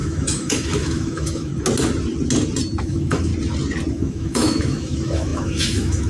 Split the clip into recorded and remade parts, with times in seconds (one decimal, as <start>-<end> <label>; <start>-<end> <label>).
0.0-1.5 remade; 1.5-2.8 recorded; 2.8-3.3 remade; 3.3-3.9 recorded; 3.9-6.1 remade